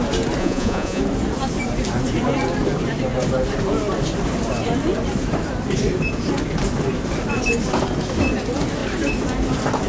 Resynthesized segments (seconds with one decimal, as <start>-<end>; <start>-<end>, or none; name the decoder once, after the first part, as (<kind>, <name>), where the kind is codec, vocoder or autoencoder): 0.4-1.0 (vocoder, Vocos)